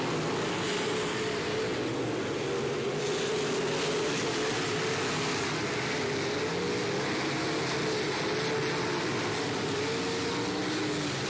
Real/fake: real